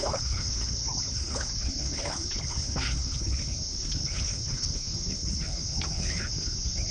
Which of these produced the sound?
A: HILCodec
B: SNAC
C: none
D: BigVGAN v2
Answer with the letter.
A